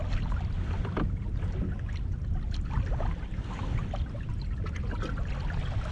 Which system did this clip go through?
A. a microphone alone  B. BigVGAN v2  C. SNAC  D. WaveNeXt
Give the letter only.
A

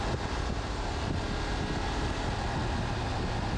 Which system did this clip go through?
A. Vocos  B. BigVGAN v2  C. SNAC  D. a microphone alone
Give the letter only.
D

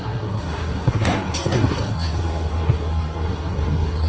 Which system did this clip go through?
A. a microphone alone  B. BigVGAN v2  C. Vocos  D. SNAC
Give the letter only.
D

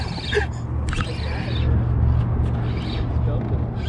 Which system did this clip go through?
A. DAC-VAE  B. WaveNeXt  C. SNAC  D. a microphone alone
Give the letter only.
D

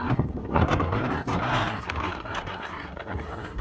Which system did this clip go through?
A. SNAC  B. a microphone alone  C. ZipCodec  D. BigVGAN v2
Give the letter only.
A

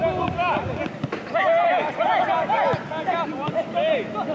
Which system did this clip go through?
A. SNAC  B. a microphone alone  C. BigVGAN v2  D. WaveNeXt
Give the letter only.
B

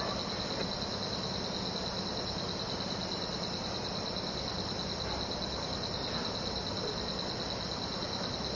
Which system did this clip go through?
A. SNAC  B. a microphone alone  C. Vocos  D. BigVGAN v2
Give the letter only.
B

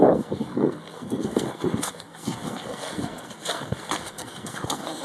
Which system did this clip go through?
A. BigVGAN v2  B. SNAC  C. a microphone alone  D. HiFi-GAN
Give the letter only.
B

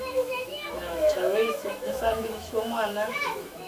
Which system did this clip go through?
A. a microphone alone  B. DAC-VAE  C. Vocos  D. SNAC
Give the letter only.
B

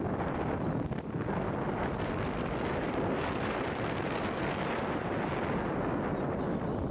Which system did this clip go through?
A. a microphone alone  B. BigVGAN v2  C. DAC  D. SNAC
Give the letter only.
A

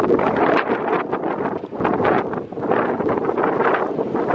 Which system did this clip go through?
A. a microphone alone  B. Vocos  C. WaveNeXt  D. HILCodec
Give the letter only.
A